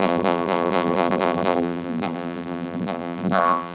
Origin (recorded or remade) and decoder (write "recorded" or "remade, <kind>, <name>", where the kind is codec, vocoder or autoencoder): remade, vocoder, BigVGAN v2